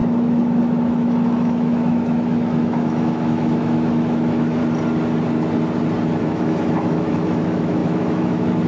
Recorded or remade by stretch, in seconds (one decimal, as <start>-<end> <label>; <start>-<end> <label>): 0.0-4.6 remade; 4.6-6.2 recorded; 6.2-8.7 remade